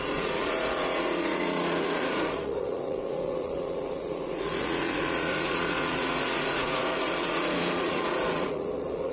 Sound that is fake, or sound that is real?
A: fake